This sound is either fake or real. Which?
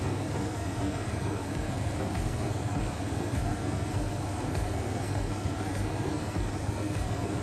fake